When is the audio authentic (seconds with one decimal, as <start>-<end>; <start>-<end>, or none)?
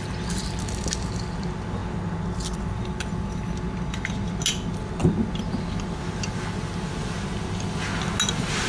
0.0-8.7